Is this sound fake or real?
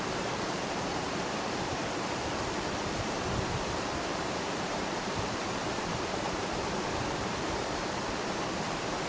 fake